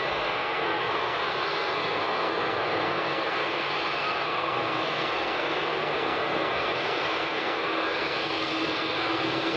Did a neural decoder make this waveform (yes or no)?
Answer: yes